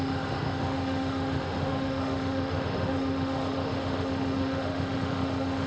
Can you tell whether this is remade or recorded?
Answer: remade